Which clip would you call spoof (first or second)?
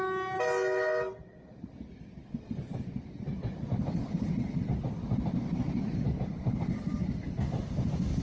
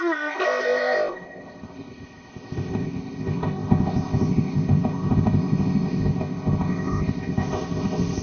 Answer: second